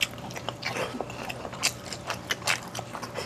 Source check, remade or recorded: recorded